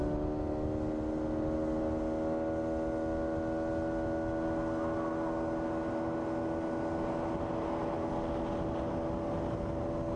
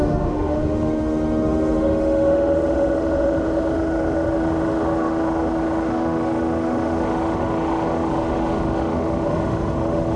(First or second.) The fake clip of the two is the second